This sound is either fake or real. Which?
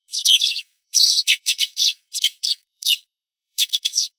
fake